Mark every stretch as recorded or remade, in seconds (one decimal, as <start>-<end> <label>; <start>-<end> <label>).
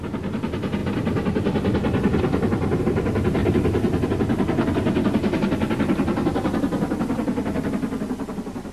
0.0-8.7 recorded